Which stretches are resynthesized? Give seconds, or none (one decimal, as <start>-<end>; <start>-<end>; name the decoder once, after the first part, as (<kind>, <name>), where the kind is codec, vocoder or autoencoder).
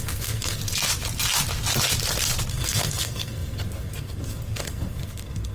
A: 0.0-0.6 (codec, SNAC); 2.5-5.5